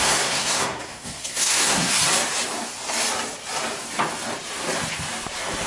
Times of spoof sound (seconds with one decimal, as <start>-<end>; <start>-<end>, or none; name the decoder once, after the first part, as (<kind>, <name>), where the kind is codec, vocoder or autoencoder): 0.0-2.0 (codec, SNAC)